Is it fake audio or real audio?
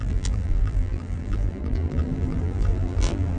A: fake